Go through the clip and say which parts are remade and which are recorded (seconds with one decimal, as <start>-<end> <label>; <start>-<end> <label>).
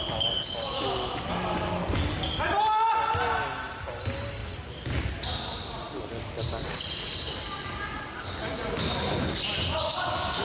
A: 0.0-10.4 recorded